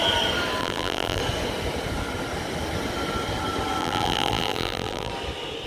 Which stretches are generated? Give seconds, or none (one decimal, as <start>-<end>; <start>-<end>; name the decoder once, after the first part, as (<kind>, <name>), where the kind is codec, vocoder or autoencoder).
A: 0.6-1.2 (vocoder, BigVGAN v2); 3.8-5.1